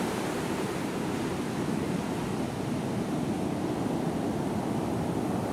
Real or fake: real